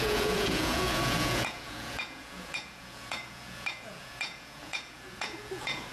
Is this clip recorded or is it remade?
remade